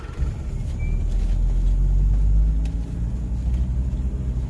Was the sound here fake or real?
real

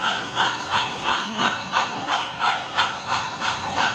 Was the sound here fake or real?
fake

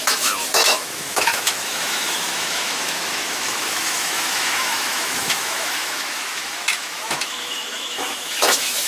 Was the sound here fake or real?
fake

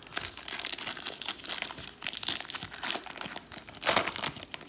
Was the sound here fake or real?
real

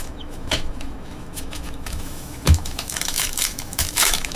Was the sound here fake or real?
fake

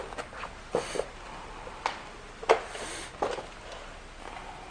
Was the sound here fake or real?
real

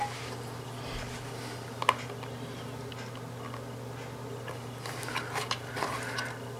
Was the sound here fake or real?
real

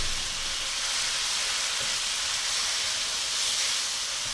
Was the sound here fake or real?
real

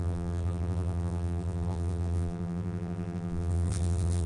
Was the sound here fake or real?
fake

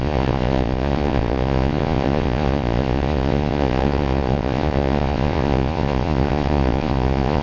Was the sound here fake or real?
fake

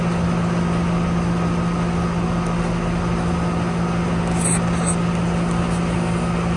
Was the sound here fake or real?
real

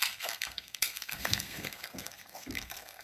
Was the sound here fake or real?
fake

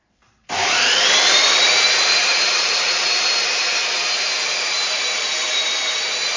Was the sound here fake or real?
fake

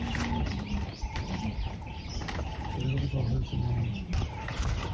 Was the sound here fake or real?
real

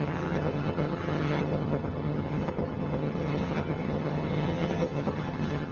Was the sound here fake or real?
fake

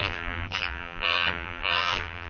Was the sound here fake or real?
fake